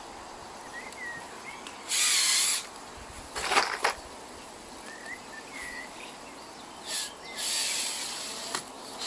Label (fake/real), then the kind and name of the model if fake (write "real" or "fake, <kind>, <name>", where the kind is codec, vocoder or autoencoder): real